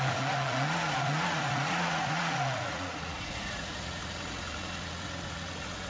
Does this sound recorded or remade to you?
remade